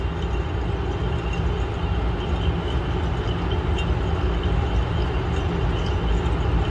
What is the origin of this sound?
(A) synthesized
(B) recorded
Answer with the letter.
B